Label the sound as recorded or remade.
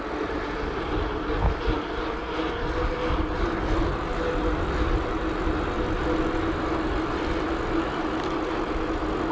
recorded